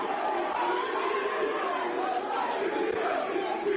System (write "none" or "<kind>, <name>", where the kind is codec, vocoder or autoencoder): vocoder, BigVGAN v2